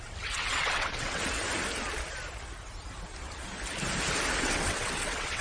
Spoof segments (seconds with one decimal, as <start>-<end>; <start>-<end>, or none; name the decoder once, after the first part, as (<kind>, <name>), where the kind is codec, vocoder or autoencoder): 0.0-1.2 (vocoder, WaveNeXt); 4.4-5.4

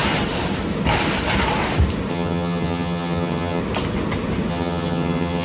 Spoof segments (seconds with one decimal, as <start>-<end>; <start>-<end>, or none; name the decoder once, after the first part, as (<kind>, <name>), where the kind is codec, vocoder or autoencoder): 2.1-3.6 (vocoder, HiFi-GAN); 4.5-5.4

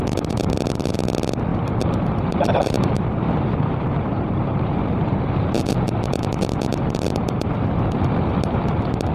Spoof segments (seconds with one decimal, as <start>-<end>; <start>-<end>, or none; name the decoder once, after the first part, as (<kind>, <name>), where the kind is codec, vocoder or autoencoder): 1.5-5.2 (vocoder, BigVGAN v2)

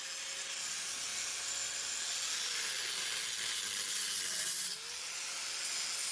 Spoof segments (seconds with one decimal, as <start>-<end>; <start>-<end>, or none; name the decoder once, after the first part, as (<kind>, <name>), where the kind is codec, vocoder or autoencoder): none